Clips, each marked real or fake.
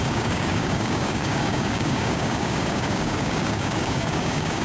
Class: fake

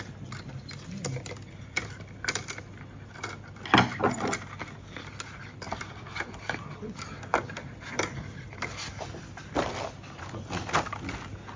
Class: real